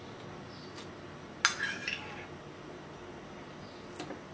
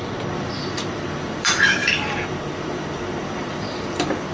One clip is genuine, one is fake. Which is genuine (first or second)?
first